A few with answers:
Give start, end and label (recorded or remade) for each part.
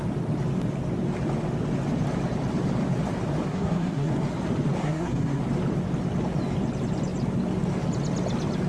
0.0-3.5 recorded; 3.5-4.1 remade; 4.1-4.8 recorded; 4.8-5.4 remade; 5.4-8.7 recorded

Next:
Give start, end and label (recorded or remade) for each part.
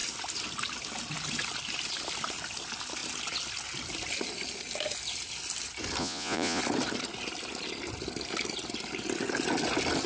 0.0-6.0 recorded; 6.0-6.6 remade; 6.6-10.1 recorded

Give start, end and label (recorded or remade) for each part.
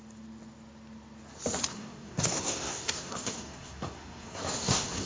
0.0-1.7 recorded; 1.7-5.1 remade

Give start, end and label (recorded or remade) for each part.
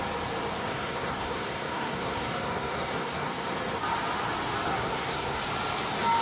0.0-0.6 recorded; 0.6-3.6 remade; 3.6-4.7 recorded; 4.7-5.4 remade; 5.4-6.2 recorded